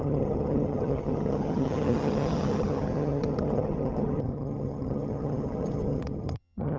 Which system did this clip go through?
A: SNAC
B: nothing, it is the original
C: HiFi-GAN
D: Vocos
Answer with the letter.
C